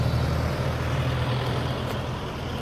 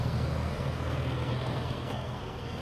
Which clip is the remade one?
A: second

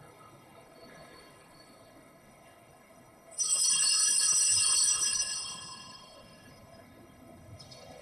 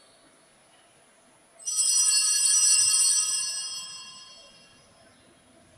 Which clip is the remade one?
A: first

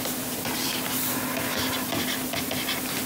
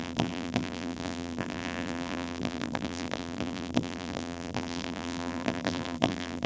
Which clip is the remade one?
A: second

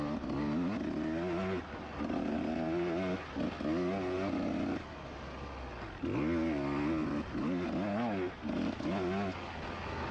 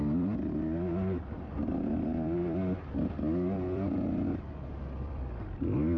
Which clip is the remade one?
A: second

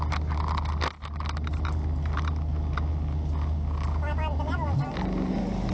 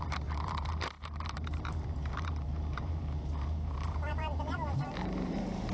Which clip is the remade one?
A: second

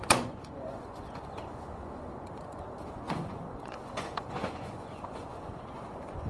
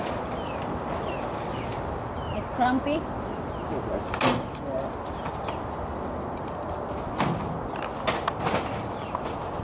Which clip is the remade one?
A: first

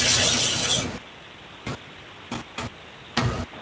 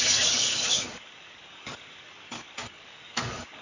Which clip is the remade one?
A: second